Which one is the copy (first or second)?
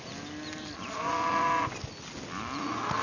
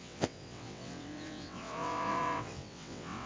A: second